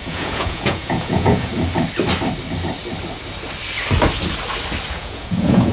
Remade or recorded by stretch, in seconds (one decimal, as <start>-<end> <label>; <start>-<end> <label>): 0.0-1.5 remade; 1.5-4.9 recorded; 4.9-5.7 remade